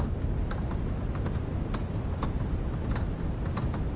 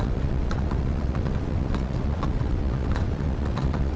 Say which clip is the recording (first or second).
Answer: first